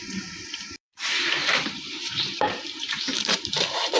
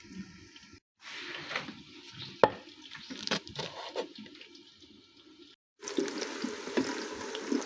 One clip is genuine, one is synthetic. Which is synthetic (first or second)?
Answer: first